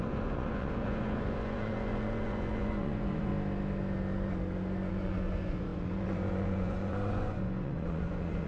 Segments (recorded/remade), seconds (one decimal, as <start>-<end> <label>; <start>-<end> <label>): 0.0-3.3 remade; 3.3-4.9 recorded; 4.9-8.5 remade